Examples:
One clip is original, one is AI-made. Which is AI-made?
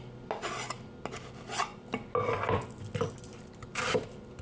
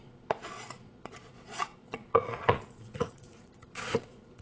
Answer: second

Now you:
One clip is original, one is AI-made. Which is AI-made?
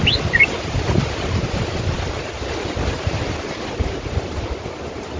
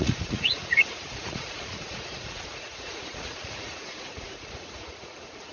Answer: second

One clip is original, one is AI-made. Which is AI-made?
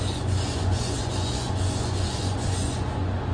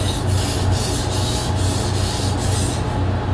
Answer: first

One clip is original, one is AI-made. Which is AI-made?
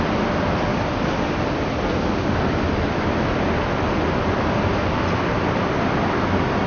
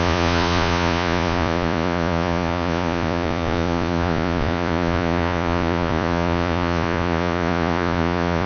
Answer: second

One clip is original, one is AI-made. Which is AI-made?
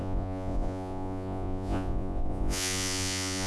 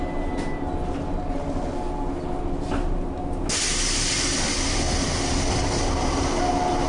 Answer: first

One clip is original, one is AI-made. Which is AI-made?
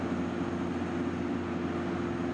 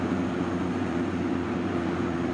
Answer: second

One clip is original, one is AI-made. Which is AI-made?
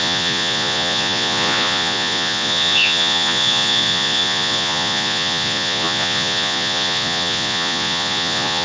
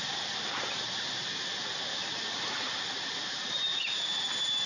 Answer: first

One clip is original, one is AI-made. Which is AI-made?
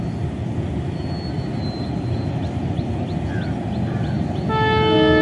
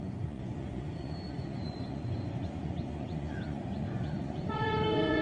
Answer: second